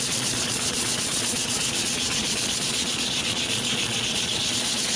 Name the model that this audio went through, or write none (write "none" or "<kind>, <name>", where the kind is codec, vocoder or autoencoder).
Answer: vocoder, Vocos